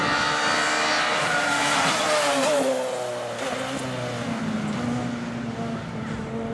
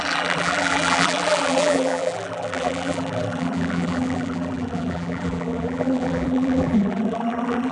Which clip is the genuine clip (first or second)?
first